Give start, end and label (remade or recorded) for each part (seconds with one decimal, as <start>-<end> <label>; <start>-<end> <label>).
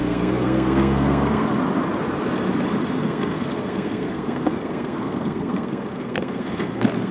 0.0-1.5 remade; 1.5-3.0 recorded; 3.0-7.1 remade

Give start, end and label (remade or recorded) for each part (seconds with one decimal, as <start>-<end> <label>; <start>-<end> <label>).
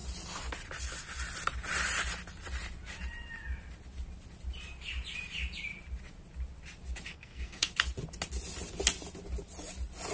0.0-7.1 recorded; 7.1-7.7 remade; 7.7-10.1 recorded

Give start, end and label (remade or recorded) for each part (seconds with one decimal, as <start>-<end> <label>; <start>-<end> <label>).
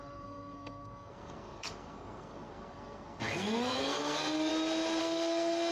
0.0-4.5 remade; 4.5-5.0 recorded; 5.0-5.7 remade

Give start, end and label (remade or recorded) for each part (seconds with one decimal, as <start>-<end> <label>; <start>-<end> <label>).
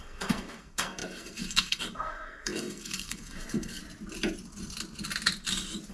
0.0-3.8 remade; 3.8-5.9 recorded